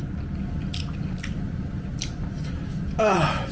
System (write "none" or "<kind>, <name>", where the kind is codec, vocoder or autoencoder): none